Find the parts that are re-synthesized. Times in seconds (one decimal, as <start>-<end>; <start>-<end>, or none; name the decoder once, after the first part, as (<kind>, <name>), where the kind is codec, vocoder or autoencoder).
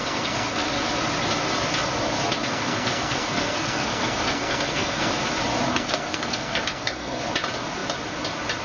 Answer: 0.0-0.7 (codec, SNAC); 2.4-5.1; 5.7-7.2